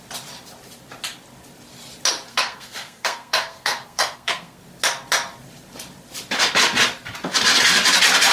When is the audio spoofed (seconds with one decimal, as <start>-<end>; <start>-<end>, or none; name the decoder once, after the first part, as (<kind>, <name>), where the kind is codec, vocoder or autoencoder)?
2.3-4.6 (codec, SNAC)